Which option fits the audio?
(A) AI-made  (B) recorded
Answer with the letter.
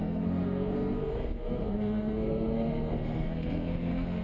A